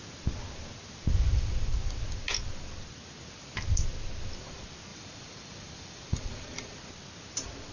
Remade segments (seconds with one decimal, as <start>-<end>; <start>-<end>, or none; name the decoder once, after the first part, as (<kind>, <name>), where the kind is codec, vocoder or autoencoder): 4.9-6.8 (vocoder, BigVGAN v2)